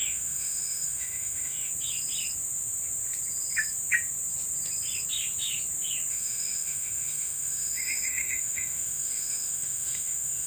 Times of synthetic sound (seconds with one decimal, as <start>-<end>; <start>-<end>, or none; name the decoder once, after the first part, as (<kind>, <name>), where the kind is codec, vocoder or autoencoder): 0.0-1.7 (autoencoder, DAC-VAE); 6.1-10.5